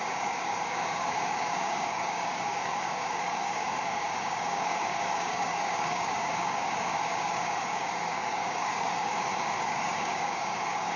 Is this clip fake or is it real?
fake